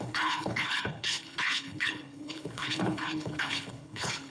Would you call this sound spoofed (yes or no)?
yes